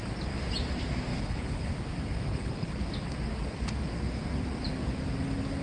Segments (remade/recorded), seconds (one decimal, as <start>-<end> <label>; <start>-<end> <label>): 0.0-1.1 recorded; 1.1-1.7 remade; 1.7-2.3 recorded; 2.3-2.9 remade; 2.9-5.6 recorded